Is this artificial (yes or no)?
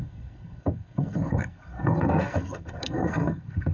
yes